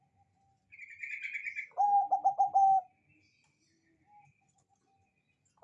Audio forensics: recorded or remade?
recorded